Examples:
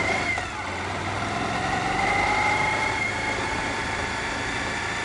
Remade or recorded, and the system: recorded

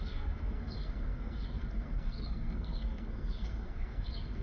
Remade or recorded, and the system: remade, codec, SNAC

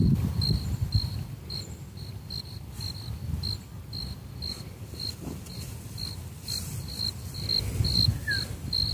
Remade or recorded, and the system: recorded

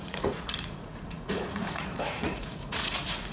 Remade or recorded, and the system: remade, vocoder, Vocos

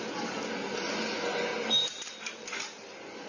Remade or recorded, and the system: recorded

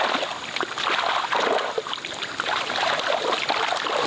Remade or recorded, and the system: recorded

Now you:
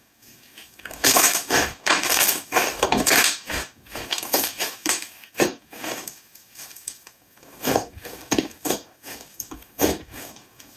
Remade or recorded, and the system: remade, codec, DAC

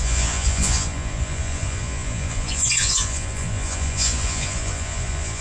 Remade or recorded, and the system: remade, vocoder, Vocos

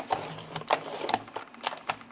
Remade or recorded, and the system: recorded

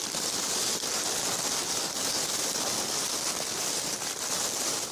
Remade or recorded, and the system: recorded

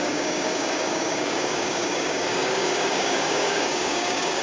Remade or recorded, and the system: remade, codec, DAC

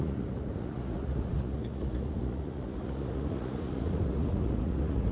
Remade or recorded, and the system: remade, vocoder, Vocos